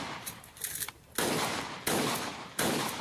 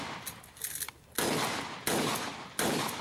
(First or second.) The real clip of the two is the second